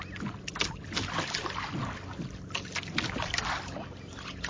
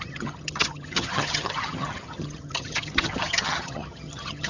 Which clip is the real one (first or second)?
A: first